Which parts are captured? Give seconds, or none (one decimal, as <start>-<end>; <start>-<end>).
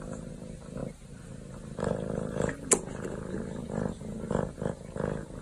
0.0-5.4